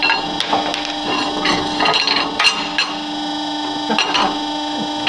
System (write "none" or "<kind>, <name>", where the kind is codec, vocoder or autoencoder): none